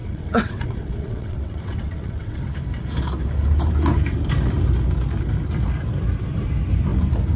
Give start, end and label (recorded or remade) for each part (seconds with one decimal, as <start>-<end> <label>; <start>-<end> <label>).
0.0-2.4 remade; 2.4-7.4 recorded

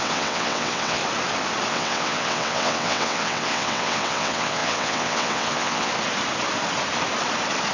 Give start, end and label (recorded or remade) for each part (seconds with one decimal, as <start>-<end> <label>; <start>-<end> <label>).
0.0-1.0 remade; 1.0-1.7 recorded; 1.7-5.9 remade; 5.9-7.7 recorded

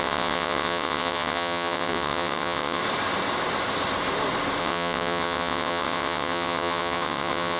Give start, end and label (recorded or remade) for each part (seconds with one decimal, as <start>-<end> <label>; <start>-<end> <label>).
0.0-2.8 remade; 2.8-4.6 recorded; 4.6-7.6 remade

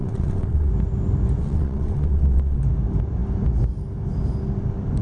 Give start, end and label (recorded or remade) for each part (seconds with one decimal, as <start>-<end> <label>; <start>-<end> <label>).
0.0-0.7 remade; 0.7-1.4 recorded; 1.4-2.6 remade; 2.6-5.0 recorded

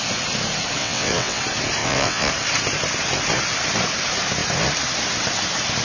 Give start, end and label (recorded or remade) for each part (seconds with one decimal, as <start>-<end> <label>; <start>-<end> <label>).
0.0-0.8 recorded; 0.8-1.4 remade; 1.4-1.8 recorded; 1.8-2.3 remade; 2.3-5.8 recorded